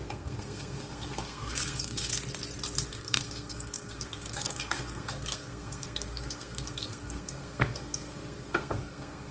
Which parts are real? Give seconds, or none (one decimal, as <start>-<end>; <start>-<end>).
2.1-2.9